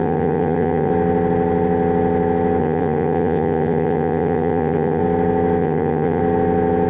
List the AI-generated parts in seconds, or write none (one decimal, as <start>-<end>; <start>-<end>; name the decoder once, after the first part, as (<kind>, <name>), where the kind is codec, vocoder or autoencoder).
0.0-0.9 (vocoder, HiFi-GAN); 2.6-5.0; 5.6-6.2